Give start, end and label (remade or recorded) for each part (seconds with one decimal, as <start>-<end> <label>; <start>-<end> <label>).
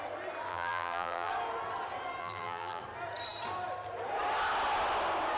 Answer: 0.0-0.5 recorded; 0.5-1.3 remade; 1.3-2.2 recorded; 2.2-2.8 remade; 2.8-5.4 recorded